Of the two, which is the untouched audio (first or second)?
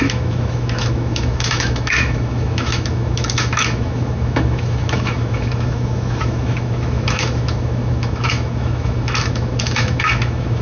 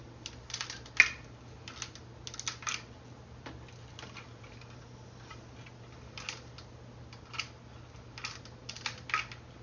second